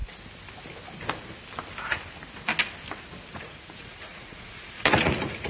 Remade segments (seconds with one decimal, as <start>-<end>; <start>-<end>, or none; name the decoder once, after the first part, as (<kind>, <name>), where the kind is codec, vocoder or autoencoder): 3.3-5.5 (vocoder, Vocos)